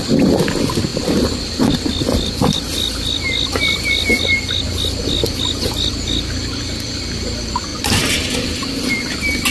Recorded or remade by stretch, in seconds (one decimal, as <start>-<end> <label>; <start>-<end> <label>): 0.0-9.5 recorded

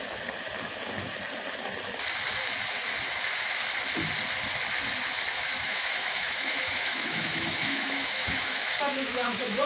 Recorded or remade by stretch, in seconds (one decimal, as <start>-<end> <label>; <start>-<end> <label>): 0.0-5.3 recorded; 5.3-9.7 remade

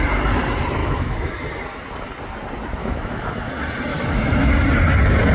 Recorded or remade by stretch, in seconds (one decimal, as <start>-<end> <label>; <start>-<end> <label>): 0.0-0.8 recorded; 0.8-1.3 remade; 1.3-2.8 recorded; 2.8-3.5 remade; 3.5-3.9 recorded; 3.9-4.5 remade; 4.5-5.3 recorded

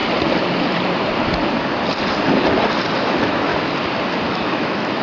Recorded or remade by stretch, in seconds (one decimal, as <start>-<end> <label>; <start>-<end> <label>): 0.0-3.0 recorded; 3.0-3.5 remade; 3.5-4.3 recorded; 4.3-5.0 remade